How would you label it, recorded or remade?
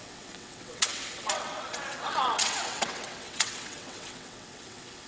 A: remade